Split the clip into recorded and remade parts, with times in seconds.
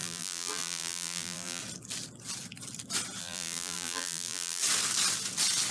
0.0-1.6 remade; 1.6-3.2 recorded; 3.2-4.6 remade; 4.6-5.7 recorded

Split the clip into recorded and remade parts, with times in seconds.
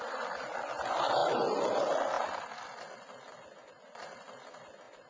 0.0-5.1 recorded